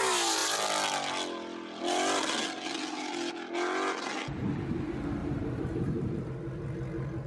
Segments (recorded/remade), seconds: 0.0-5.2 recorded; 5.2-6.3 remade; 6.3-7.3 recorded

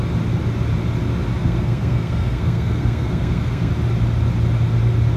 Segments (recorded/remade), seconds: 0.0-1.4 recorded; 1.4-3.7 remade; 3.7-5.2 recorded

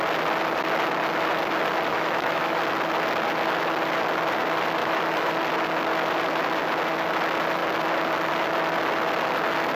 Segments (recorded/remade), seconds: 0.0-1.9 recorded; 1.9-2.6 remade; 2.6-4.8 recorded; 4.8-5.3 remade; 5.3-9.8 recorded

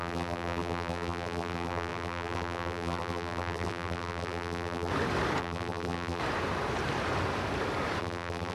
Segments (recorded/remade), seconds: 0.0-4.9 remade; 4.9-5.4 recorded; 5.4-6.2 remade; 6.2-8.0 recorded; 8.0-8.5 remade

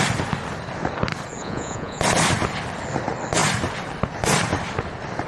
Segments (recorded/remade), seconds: 0.0-1.4 recorded; 1.4-2.0 remade; 2.0-5.3 recorded